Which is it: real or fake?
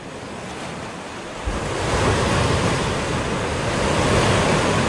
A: real